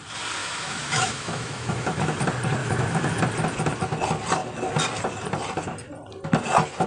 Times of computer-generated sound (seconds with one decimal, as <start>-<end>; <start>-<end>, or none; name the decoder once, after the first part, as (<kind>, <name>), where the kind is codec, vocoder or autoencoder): 0.4-2.2 (autoencoder, DAC-VAE); 2.6-3.2